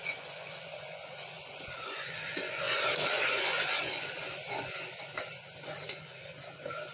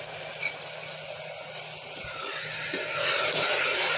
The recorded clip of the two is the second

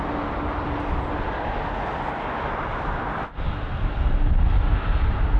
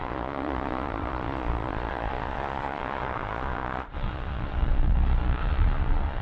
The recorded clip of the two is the first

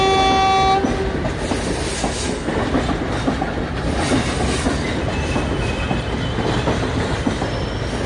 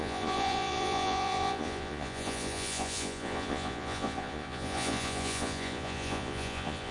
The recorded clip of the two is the first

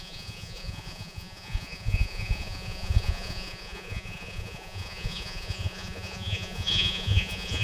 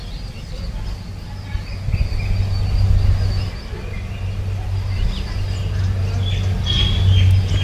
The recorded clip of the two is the second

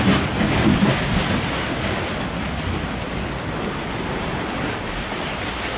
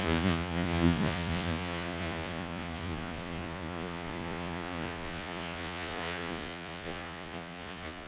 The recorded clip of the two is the first